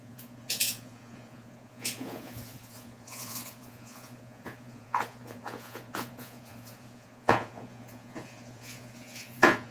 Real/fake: fake